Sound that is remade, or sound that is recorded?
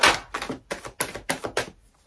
recorded